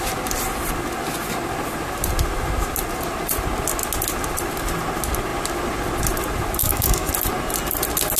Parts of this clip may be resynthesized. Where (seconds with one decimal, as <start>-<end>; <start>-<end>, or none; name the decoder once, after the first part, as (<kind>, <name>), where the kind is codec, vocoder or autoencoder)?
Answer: 6.6-7.1 (codec, DAC)

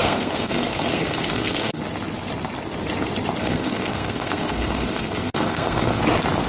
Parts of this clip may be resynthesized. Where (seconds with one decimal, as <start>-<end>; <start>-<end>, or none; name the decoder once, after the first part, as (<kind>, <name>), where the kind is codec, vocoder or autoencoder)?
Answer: 0.0-1.8 (codec, SNAC); 3.4-6.0